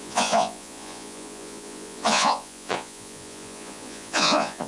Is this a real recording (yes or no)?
no